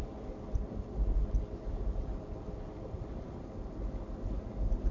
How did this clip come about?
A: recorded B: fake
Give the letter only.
A